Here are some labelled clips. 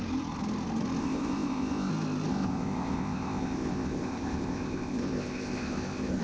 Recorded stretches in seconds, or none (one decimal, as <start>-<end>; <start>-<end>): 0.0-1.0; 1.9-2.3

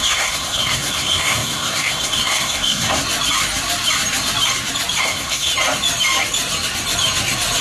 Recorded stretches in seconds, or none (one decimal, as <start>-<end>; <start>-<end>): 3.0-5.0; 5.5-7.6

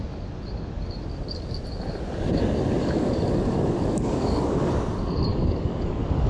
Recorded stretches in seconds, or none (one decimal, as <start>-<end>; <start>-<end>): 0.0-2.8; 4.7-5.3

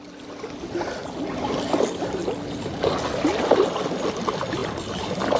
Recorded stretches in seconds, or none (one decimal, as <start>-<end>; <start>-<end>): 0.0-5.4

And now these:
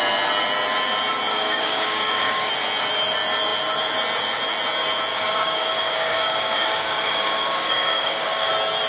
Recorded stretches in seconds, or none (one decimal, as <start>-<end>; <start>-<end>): 0.0-1.3; 2.5-5.1; 8.5-8.9

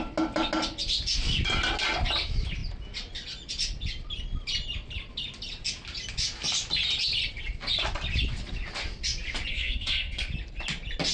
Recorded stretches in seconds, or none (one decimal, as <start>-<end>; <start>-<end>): 0.0-9.5; 10.3-11.1